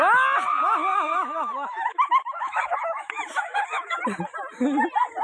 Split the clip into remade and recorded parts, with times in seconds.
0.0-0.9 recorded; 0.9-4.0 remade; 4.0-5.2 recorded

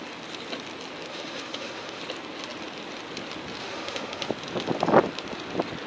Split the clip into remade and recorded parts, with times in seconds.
0.0-1.1 recorded; 1.1-2.0 remade; 2.0-3.6 recorded; 3.6-4.3 remade; 4.3-5.9 recorded

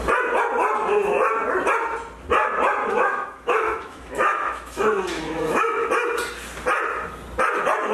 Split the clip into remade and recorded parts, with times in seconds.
0.0-2.8 recorded; 2.8-5.9 remade; 5.9-7.9 recorded

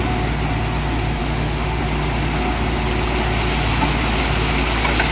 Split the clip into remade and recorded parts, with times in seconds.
0.0-1.2 recorded; 1.2-1.8 remade; 1.8-5.1 recorded

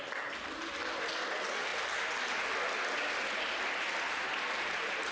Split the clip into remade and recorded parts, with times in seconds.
0.0-5.1 recorded